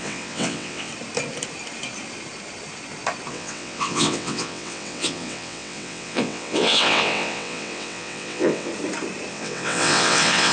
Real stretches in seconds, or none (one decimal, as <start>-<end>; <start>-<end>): 0.9-3.3; 8.7-9.3